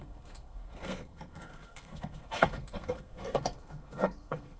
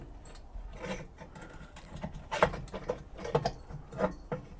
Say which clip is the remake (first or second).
first